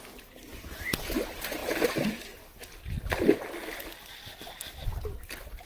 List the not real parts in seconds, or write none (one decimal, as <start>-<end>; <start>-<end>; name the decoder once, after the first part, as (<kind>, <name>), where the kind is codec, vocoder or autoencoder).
none